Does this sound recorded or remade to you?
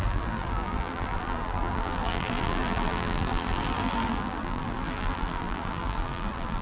remade